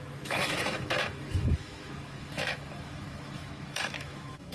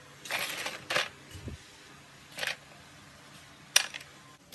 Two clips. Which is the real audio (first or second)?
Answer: second